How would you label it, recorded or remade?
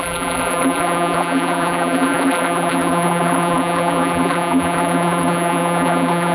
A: remade